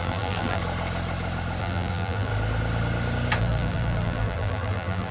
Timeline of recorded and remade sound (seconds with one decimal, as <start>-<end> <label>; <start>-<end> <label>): 0.0-0.6 remade; 0.6-1.6 recorded; 1.6-2.3 remade; 2.3-3.4 recorded; 3.4-5.1 remade